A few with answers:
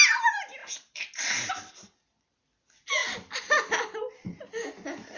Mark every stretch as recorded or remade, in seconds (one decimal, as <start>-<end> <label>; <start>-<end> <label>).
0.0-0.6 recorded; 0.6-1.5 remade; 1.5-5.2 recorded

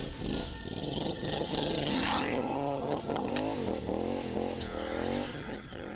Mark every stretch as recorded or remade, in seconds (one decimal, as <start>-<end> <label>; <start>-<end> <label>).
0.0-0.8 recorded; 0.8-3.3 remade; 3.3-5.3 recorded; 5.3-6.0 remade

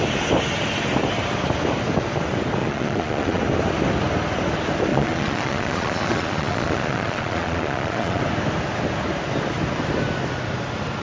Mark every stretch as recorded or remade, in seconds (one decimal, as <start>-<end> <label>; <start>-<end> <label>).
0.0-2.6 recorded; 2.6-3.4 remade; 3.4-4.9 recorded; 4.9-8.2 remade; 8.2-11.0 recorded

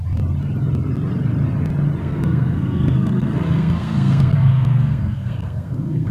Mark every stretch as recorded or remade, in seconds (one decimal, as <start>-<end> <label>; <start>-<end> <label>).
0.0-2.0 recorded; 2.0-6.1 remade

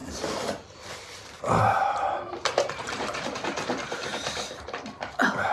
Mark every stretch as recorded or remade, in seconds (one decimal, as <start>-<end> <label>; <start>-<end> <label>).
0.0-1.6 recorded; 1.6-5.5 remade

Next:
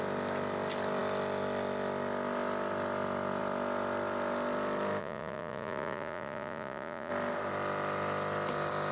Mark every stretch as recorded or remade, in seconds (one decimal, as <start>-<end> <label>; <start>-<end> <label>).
0.0-5.0 recorded; 5.0-7.1 remade; 7.1-8.9 recorded